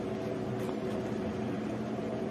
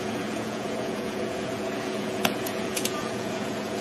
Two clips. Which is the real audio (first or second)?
first